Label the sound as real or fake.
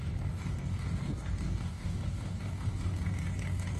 fake